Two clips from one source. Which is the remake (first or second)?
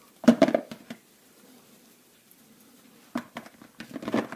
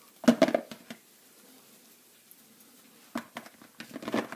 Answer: first